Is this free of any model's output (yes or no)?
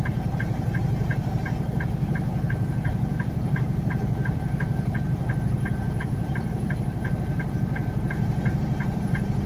no